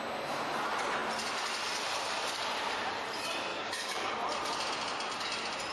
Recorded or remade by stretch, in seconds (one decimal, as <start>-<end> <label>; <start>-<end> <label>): 0.0-3.5 recorded; 3.5-4.1 remade; 4.1-5.7 recorded